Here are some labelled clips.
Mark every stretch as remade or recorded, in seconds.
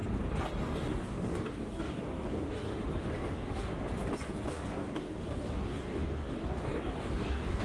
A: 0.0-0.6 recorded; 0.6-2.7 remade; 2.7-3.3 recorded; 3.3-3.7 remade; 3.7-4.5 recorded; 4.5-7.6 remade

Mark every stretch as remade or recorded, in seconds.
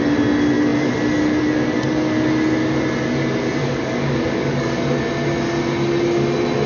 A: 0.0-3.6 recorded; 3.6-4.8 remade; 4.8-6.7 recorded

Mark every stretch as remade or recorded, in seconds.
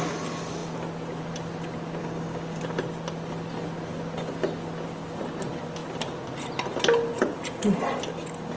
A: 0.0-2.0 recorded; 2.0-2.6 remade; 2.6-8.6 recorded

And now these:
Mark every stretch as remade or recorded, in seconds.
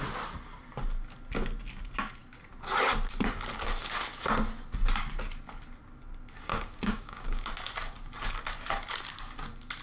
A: 0.0-6.5 recorded; 6.5-7.5 remade; 7.5-9.8 recorded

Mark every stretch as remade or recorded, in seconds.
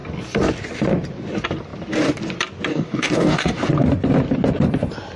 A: 0.0-2.7 recorded; 2.7-3.7 remade; 3.7-5.2 recorded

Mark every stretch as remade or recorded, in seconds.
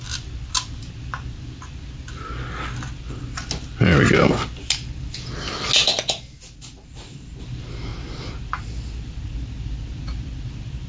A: 0.0-10.9 recorded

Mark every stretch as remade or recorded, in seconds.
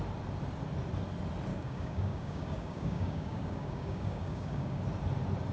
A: 0.0-1.5 recorded; 1.5-4.8 remade; 4.8-5.5 recorded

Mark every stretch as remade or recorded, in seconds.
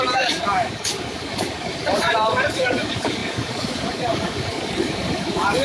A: 0.0-5.6 remade